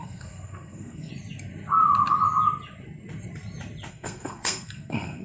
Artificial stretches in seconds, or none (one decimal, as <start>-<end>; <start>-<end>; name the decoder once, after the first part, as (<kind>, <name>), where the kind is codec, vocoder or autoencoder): 0.0-1.1 (codec, SNAC); 3.9-5.2